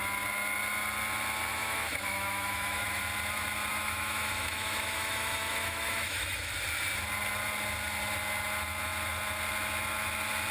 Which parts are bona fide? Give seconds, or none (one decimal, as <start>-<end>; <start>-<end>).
0.0-1.5; 3.0-3.7; 6.5-10.5